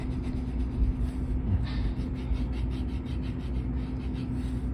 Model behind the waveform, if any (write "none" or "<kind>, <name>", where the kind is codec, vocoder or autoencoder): none